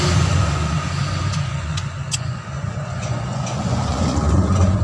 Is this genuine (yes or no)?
no